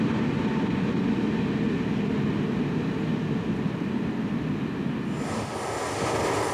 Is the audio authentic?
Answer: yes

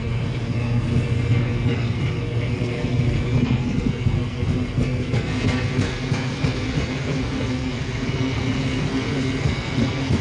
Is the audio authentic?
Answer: no